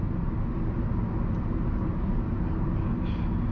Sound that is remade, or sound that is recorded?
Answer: recorded